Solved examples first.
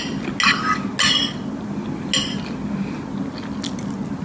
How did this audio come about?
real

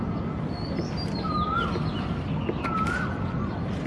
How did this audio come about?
real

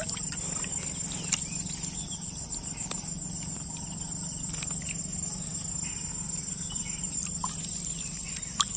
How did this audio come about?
real